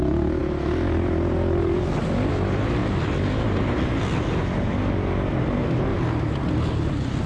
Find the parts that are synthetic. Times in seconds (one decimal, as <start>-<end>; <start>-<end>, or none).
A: none